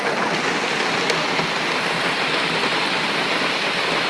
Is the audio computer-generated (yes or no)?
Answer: no